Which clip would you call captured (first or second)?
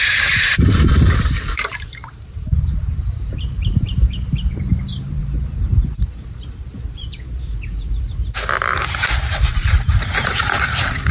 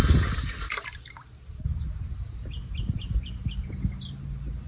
second